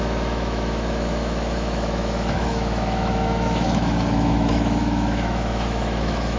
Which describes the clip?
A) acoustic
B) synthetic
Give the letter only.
B